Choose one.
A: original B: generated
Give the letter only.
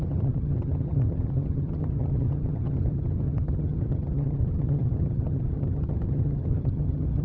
B